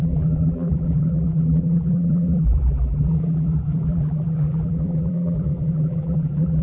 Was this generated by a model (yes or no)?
yes